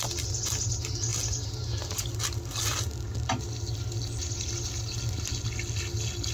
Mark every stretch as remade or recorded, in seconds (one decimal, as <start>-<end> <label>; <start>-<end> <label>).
0.0-6.3 recorded